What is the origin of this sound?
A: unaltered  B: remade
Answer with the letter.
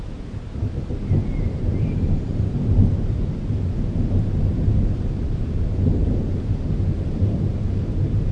B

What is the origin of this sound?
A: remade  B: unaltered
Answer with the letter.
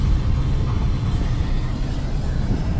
B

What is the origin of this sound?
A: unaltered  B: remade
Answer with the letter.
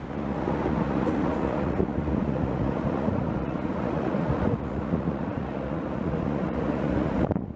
B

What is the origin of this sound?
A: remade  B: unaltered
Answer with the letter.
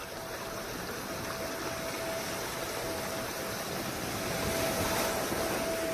B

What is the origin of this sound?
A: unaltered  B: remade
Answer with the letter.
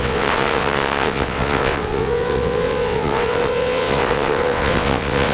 B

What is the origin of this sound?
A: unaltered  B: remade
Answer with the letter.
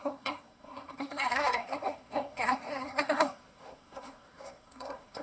B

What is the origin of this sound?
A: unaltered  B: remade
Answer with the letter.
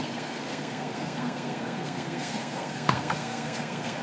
B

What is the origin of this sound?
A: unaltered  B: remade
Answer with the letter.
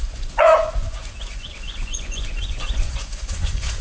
B